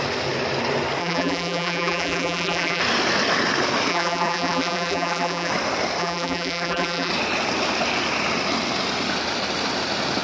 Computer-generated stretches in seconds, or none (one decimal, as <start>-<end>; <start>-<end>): 1.0-2.8; 3.9-5.5; 6.0-7.1

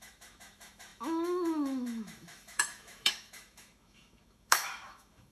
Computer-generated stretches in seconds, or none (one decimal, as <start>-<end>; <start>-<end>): 0.0-5.3

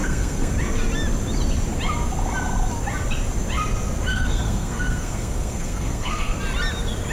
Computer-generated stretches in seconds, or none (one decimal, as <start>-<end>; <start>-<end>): 0.0-0.5; 4.1-6.4

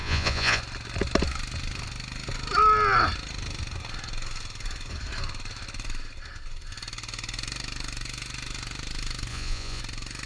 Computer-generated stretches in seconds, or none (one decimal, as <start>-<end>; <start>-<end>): 0.0-0.6; 9.3-9.8

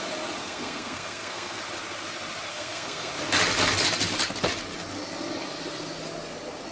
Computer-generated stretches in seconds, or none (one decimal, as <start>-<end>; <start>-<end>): 0.4-1.6; 2.5-3.1

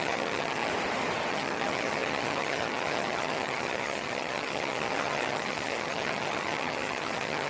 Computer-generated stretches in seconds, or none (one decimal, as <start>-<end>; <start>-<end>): 0.0-0.7; 1.3-7.5